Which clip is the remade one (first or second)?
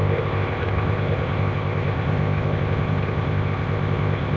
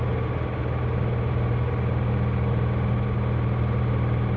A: first